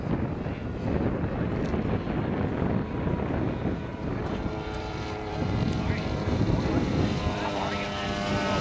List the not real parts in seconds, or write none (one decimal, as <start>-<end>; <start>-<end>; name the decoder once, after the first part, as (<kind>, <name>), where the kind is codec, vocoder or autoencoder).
3.9-7.6 (vocoder, BigVGAN v2)